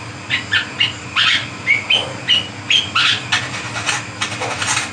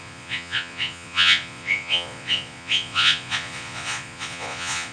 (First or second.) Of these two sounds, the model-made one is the second